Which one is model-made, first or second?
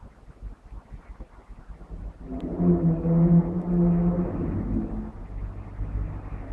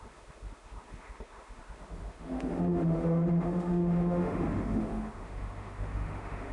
second